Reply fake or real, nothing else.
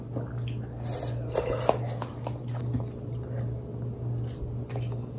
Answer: real